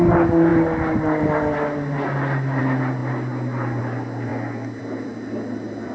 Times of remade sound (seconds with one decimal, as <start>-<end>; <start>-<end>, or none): none